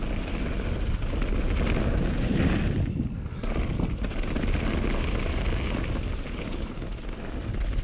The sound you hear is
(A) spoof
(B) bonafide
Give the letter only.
B